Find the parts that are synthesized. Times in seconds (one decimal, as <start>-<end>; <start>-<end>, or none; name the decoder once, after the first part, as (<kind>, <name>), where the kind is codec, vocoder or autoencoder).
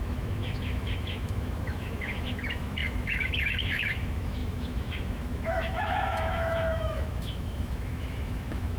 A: 0.0-8.8 (autoencoder, DAC-VAE)